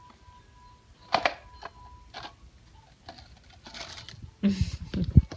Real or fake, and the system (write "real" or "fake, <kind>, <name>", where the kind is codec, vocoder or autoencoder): real